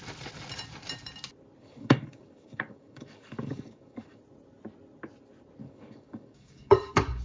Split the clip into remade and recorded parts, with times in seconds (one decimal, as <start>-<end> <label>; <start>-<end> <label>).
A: 0.0-1.6 recorded; 1.6-4.2 remade; 4.2-5.6 recorded; 5.6-7.2 remade